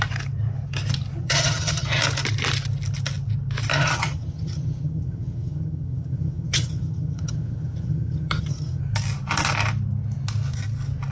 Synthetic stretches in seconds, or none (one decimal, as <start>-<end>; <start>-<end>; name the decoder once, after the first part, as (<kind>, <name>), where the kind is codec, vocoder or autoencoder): 1.2-2.0 (vocoder, HiFi-GAN); 3.7-8.8